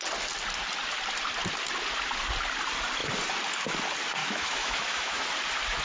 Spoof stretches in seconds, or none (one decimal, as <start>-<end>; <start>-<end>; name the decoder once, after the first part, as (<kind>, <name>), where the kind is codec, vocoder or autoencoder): 4.2-5.2 (autoencoder, DAC-VAE)